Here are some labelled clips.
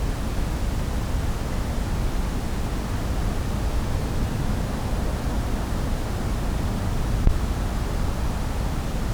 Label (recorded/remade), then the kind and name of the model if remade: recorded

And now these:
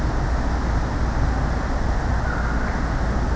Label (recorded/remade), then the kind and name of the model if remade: recorded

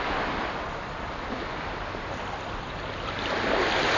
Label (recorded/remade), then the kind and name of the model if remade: recorded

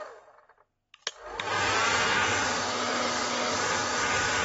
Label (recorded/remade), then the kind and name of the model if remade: recorded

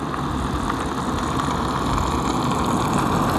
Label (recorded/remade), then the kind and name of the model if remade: recorded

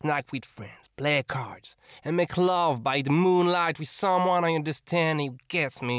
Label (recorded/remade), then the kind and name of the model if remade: recorded